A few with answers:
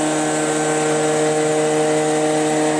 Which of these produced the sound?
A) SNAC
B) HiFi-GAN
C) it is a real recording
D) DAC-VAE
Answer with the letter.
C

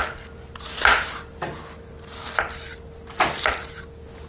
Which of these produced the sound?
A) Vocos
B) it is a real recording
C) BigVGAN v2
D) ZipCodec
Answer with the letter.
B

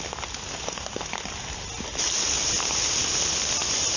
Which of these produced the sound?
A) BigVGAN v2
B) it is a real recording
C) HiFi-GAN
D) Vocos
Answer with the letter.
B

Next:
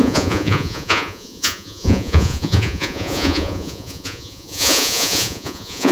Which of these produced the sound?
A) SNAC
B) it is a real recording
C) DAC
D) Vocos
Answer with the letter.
D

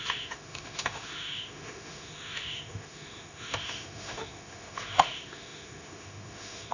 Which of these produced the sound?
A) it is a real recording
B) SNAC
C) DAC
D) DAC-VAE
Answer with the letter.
D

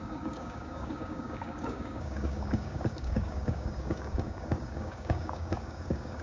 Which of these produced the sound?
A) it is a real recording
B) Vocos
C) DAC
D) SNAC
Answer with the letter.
C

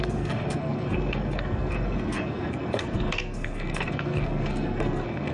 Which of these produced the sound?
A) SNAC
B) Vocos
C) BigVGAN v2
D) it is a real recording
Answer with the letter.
A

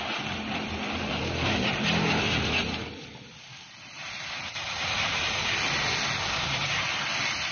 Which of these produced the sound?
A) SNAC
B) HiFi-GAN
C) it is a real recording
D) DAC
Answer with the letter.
C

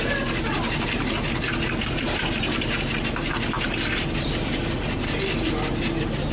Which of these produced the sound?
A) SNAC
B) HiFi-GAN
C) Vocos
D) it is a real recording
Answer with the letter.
D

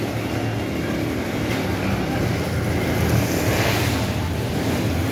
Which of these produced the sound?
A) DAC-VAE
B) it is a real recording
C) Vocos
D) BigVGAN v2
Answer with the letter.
B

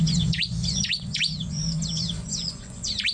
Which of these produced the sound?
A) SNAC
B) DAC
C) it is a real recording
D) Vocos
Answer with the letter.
D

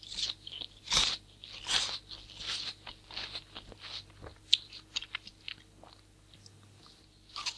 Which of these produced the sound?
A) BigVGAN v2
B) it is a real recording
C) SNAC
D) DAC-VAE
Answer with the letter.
B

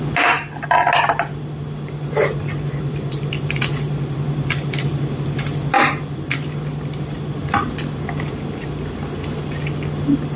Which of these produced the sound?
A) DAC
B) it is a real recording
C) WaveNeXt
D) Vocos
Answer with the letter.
B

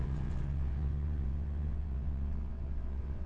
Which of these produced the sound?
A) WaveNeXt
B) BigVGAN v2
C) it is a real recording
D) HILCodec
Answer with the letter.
A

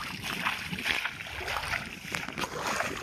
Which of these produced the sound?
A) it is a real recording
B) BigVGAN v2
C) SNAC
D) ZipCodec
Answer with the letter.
A